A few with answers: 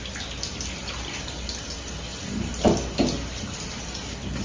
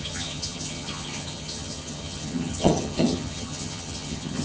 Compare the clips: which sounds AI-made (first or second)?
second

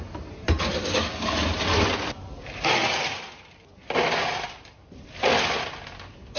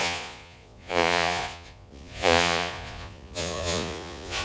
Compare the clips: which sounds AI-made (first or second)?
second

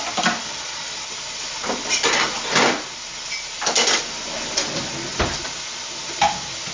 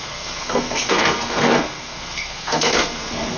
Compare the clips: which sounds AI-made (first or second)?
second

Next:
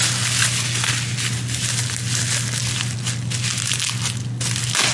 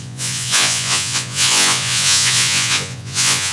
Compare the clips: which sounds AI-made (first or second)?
second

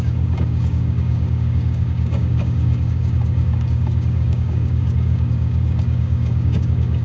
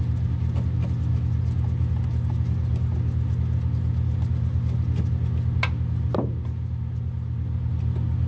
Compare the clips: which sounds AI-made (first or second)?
first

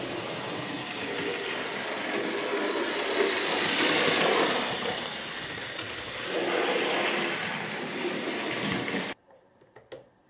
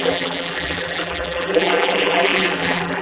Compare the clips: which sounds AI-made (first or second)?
second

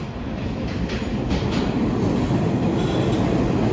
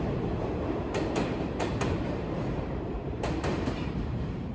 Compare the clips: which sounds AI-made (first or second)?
second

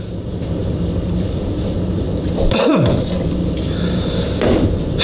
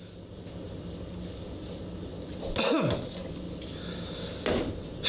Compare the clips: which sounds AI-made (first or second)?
first